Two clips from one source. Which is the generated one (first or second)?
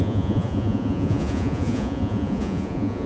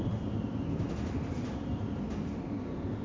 first